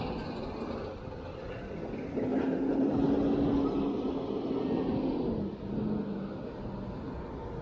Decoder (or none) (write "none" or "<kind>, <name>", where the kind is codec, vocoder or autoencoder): none